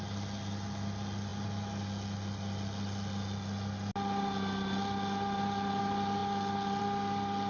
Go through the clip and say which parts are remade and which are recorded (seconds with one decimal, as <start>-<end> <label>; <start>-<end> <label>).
0.0-7.5 recorded